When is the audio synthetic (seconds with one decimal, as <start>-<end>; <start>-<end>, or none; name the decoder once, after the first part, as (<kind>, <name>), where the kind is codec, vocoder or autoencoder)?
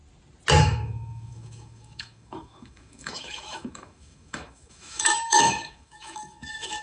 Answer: 0.6-6.8 (autoencoder, DAC-VAE)